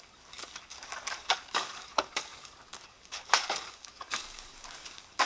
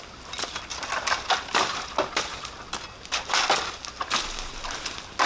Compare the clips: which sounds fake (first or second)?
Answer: first